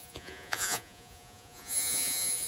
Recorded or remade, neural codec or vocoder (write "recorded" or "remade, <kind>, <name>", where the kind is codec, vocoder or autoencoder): remade, vocoder, Vocos